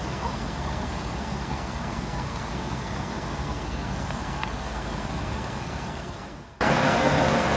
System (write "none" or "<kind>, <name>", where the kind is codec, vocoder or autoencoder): codec, SNAC